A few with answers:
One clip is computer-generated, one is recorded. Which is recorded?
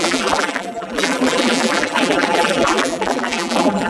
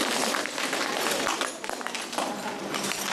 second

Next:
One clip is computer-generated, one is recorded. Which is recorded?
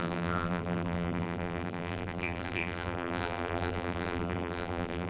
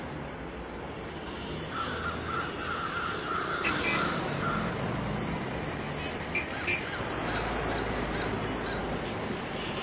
second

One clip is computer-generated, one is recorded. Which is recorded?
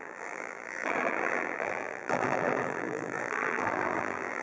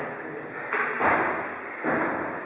second